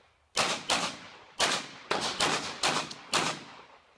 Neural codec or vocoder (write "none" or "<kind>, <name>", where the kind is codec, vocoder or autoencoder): none